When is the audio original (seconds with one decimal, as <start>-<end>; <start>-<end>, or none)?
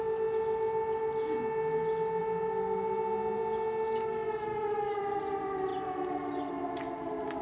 0.0-4.5; 5.0-7.4